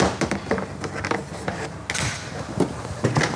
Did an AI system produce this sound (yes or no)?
no